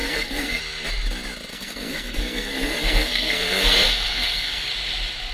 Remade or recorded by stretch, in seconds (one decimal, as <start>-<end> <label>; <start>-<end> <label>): 0.0-0.6 remade; 0.6-1.5 recorded; 1.5-4.7 remade; 4.7-5.3 recorded